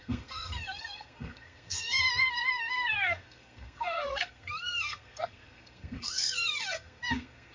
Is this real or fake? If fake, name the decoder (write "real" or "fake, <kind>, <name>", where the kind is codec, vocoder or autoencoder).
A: fake, codec, SNAC